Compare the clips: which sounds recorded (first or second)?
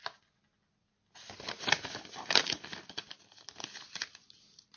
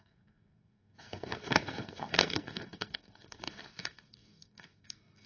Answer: first